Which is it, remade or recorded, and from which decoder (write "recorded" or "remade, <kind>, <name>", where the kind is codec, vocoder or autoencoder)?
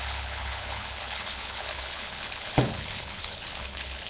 remade, codec, HILCodec